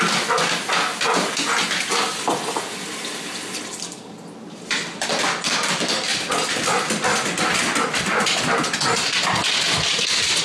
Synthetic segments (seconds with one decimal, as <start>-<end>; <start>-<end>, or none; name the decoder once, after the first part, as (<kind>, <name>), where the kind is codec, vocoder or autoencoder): none